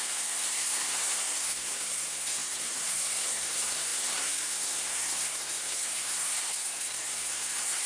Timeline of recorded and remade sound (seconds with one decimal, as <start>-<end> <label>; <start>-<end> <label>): 0.0-7.9 remade